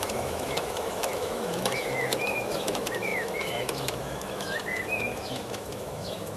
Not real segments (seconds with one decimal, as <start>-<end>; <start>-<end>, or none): 0.0-6.4